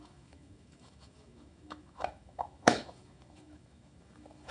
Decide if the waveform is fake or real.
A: fake